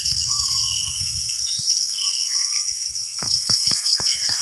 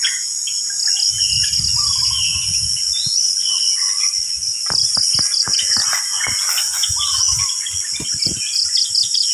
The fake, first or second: first